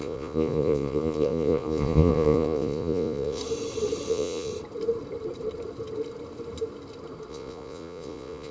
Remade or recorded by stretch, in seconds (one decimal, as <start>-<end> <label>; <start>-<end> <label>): 0.0-3.4 remade; 3.4-4.1 recorded; 4.1-4.5 remade; 4.5-7.3 recorded; 7.3-8.5 remade